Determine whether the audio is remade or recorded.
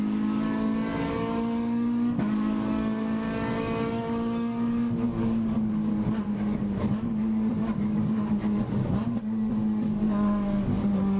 remade